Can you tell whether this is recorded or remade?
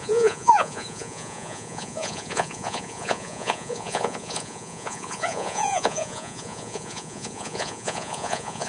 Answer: remade